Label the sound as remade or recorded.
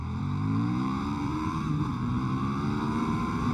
remade